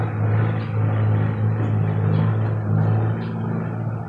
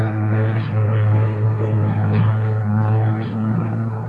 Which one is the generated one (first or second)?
second